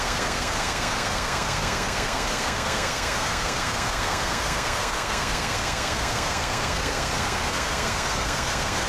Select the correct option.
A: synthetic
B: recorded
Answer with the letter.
A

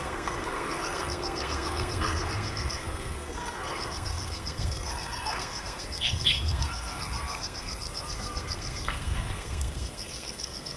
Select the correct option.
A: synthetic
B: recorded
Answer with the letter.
A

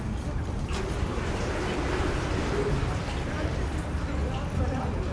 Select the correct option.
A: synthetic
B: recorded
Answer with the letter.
B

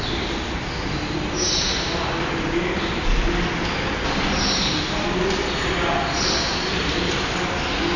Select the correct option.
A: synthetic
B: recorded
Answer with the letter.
B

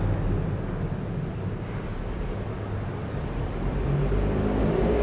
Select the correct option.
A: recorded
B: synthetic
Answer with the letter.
A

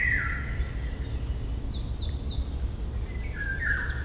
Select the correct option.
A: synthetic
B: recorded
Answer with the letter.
B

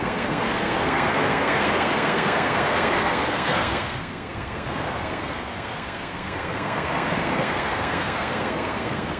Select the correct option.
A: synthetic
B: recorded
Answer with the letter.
A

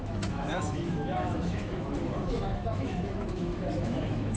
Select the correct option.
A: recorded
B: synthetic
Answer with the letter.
B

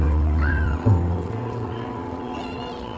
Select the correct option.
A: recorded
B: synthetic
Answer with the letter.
B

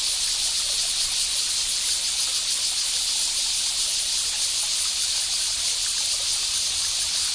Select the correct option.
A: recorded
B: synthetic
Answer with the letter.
A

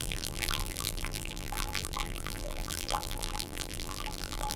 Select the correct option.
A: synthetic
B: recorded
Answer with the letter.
A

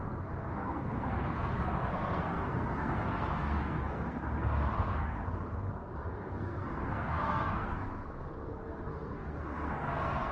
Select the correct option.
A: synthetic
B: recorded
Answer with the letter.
A